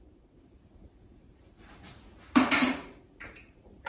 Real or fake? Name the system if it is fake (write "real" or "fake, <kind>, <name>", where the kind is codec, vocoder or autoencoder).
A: fake, vocoder, Vocos